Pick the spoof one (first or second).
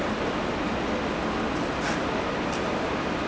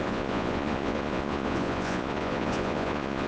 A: second